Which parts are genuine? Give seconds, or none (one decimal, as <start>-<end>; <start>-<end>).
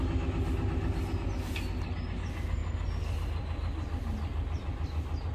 0.0-5.3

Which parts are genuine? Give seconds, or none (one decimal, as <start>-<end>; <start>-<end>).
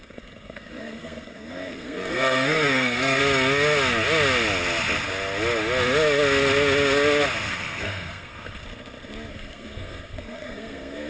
3.2-7.5; 8.6-9.3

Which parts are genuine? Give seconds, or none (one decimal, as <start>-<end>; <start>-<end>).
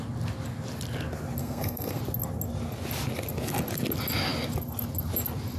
0.0-1.4; 2.0-5.6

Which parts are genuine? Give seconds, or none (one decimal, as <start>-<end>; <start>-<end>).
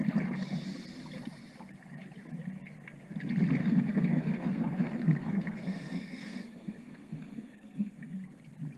0.0-3.6; 8.4-8.8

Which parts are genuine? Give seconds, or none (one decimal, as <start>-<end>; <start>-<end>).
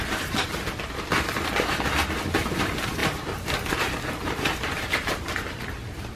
none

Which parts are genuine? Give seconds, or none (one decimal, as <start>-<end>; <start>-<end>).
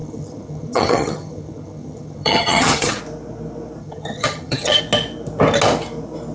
3.0-3.8; 4.8-6.3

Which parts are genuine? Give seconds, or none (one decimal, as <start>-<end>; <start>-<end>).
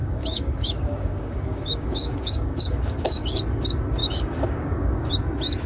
3.4-4.0; 5.1-5.7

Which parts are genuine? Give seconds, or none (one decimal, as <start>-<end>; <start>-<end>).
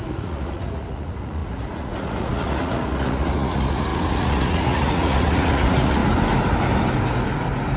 6.0-7.8